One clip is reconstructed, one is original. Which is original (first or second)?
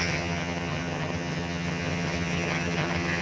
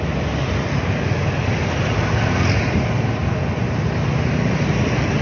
second